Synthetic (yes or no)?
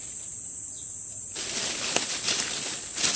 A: no